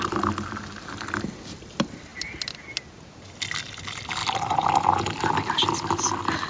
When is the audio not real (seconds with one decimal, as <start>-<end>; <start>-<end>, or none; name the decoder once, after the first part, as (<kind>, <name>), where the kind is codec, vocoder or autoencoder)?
none